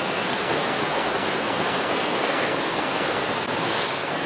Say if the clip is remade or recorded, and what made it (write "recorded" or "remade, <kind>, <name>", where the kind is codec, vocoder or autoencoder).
remade, codec, SNAC